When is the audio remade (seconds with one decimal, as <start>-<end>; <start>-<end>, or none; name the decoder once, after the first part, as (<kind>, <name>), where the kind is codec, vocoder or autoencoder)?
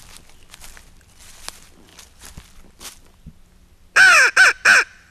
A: none